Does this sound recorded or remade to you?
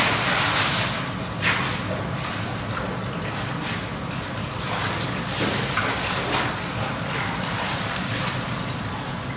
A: recorded